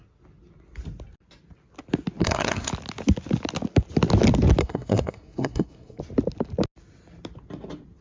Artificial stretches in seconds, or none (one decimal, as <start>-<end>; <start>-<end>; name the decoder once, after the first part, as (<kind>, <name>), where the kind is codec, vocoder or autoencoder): 2.2-2.7 (codec, SNAC); 4.6-6.0